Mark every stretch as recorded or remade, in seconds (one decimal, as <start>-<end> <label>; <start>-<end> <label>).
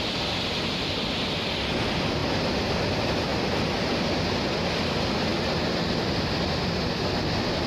0.0-7.7 recorded